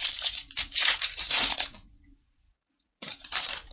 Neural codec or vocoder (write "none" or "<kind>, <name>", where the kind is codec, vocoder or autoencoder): vocoder, Vocos